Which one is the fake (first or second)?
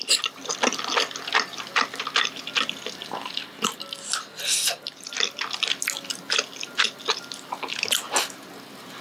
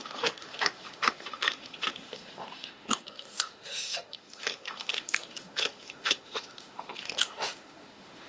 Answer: second